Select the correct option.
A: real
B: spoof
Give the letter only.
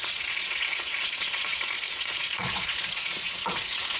B